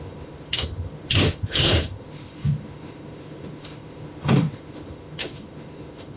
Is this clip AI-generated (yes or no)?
yes